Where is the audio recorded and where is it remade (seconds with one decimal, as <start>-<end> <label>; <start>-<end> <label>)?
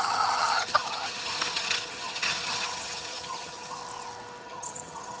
0.0-3.8 remade; 3.8-4.4 recorded; 4.4-5.2 remade